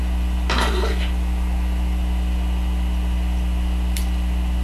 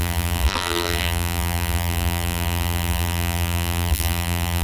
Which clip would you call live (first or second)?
first